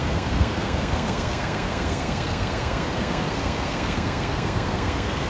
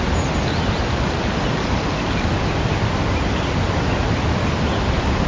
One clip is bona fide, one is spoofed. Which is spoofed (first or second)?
first